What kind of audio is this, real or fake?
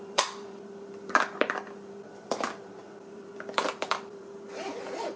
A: fake